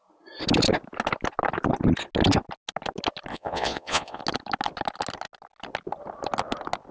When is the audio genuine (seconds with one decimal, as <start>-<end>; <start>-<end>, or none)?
0.0-3.3; 4.2-6.9

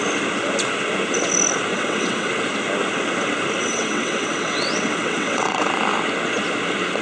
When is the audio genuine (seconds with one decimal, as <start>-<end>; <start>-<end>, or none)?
0.0-1.7; 2.3-3.6; 5.7-7.0

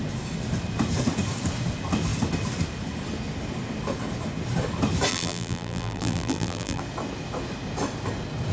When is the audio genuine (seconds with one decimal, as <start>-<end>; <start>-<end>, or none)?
0.0-5.1; 6.8-8.5

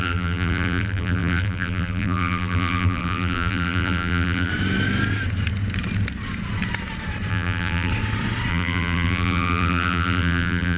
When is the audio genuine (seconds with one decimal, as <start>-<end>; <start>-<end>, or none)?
4.5-7.3; 7.9-8.5

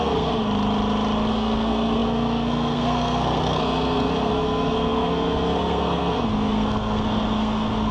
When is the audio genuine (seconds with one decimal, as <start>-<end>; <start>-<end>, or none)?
0.4-1.3

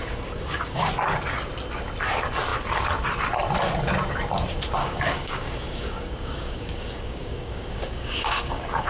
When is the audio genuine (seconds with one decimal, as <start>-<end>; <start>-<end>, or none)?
0.9-4.8